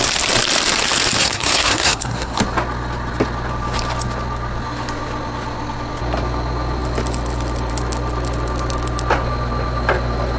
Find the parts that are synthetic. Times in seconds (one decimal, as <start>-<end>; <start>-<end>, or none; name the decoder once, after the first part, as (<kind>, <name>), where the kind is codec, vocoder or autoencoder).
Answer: 1.2-2.4 (codec, SNAC)